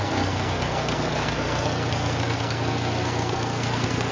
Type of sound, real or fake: fake